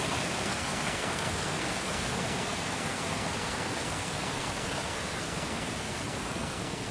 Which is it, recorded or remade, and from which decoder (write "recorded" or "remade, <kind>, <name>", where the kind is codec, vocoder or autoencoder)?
remade, codec, SNAC